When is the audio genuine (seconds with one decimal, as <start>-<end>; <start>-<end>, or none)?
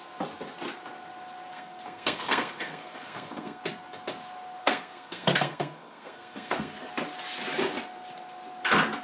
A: 0.0-1.5; 3.6-4.6; 6.9-9.0